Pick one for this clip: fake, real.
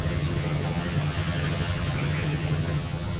fake